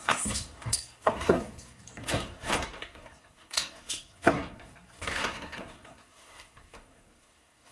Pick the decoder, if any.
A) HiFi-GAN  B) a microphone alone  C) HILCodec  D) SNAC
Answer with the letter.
D